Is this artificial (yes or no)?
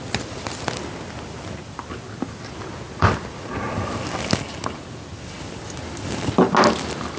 no